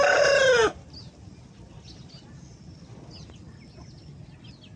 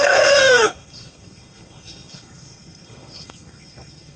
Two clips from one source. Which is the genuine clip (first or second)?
first